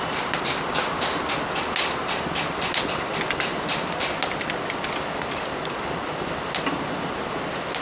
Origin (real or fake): real